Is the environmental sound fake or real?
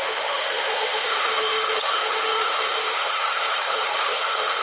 fake